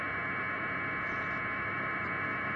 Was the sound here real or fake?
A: real